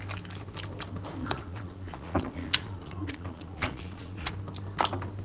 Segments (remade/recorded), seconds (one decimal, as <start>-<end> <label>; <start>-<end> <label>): 0.0-1.2 recorded; 1.2-4.3 remade; 4.3-5.2 recorded